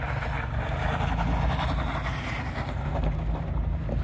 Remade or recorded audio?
recorded